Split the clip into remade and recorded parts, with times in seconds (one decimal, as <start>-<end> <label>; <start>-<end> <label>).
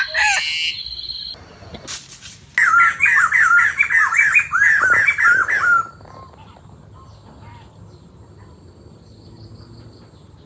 0.0-10.5 recorded